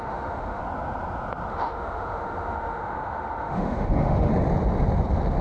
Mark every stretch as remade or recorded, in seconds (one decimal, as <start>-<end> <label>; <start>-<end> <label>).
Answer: 0.0-0.6 remade; 0.6-1.5 recorded; 1.5-4.3 remade; 4.3-5.4 recorded